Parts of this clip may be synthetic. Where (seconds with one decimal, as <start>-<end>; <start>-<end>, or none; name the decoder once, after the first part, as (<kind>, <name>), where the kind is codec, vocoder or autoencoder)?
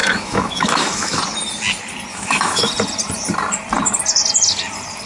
0.0-1.2 (autoencoder, DAC-VAE); 2.1-2.7